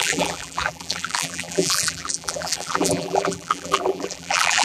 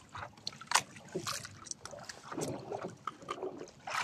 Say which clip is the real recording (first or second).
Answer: second